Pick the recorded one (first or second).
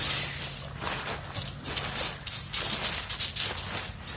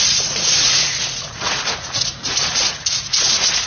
first